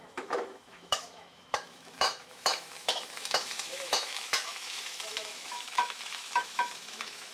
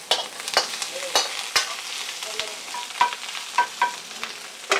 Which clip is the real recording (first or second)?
second